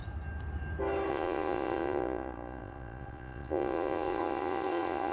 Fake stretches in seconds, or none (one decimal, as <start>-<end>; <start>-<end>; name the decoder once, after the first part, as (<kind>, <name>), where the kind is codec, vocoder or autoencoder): 1.1-5.1 (vocoder, Vocos)